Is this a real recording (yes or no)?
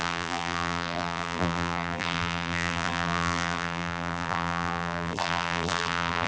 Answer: no